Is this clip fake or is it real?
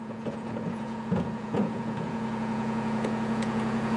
fake